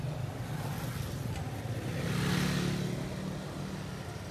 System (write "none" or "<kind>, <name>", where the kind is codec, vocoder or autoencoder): none